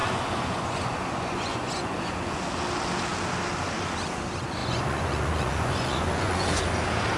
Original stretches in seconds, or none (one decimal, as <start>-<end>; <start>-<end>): 2.4-4.6; 6.6-7.2

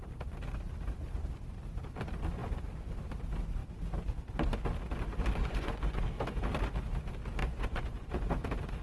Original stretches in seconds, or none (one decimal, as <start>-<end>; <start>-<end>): 0.0-5.4; 6.0-7.4; 8.3-8.8

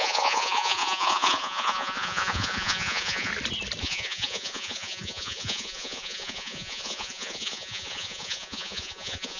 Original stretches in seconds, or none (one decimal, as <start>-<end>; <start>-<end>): 3.3-3.8

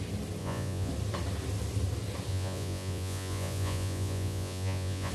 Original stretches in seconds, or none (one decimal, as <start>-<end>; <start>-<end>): 0.0-0.4; 0.9-2.3

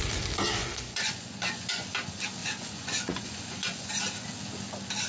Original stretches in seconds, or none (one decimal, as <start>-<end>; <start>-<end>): 0.0-0.6; 1.9-2.4; 3.9-5.1

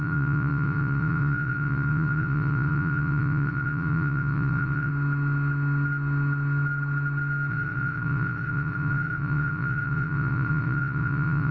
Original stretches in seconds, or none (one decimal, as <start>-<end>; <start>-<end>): 4.9-7.5